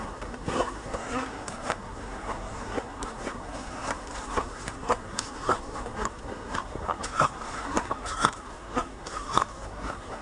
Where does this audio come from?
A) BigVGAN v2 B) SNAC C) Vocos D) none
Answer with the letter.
B